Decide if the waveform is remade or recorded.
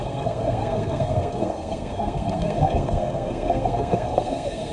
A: remade